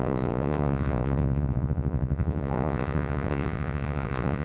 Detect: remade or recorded remade